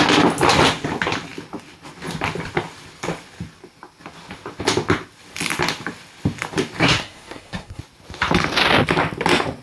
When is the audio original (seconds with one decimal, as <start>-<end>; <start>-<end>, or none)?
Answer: 0.0-6.8; 7.8-9.6

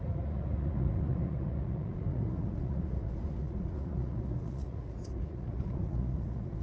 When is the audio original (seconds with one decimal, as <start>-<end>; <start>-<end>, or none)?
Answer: none